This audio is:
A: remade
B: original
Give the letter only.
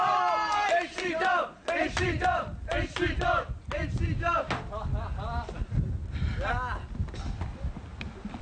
B